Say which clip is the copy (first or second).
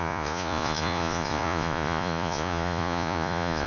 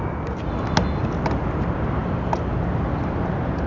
first